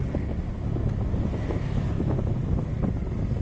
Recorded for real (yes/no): yes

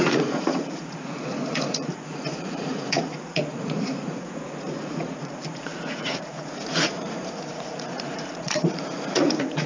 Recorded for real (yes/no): no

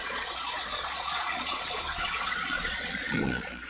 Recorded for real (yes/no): no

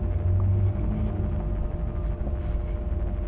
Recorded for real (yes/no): yes